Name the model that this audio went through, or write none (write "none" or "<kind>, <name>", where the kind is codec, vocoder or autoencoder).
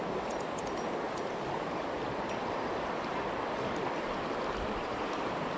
none